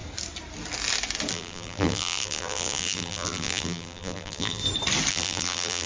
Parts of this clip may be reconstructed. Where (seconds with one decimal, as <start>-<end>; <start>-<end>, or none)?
1.3-4.6; 5.1-5.9